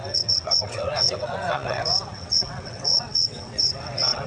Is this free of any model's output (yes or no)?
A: no